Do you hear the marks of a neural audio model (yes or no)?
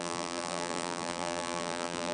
yes